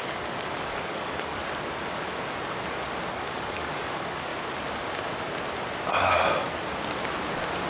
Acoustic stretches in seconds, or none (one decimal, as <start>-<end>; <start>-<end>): 1.4-3.1; 4.3-6.0; 6.4-7.7